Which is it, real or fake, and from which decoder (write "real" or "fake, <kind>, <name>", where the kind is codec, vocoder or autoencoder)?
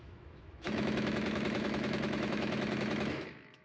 fake, autoencoder, DAC-VAE